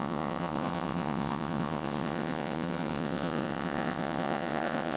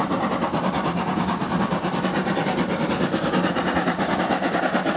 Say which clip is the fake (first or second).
first